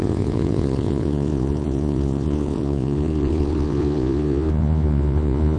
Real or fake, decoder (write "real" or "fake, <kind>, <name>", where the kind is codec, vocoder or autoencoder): fake, vocoder, Vocos